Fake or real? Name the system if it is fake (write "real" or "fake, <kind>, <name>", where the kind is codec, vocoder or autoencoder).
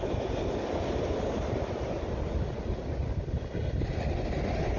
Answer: real